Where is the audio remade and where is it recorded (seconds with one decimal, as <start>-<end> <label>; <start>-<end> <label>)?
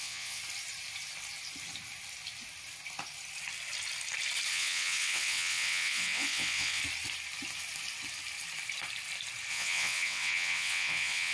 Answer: 0.0-0.4 remade; 0.4-4.5 recorded; 4.5-6.8 remade; 6.8-9.5 recorded; 9.5-11.3 remade